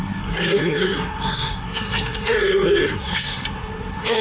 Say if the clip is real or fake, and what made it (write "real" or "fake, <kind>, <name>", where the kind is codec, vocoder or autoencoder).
fake, codec, SNAC